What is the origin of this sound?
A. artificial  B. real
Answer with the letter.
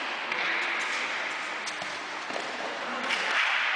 B